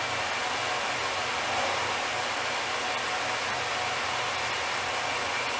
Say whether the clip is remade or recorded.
recorded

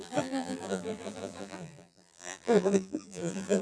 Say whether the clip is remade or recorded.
remade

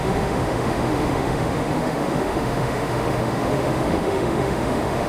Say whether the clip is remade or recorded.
remade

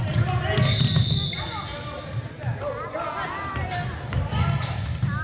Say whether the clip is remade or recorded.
recorded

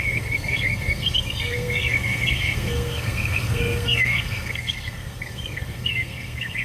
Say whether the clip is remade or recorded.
remade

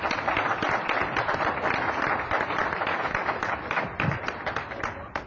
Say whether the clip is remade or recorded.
recorded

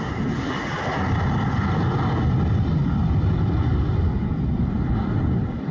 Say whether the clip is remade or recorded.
recorded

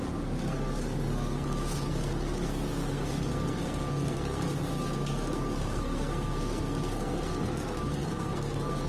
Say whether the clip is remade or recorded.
remade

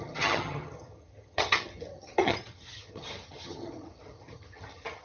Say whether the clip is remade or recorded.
remade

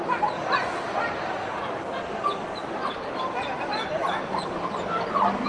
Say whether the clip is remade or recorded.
recorded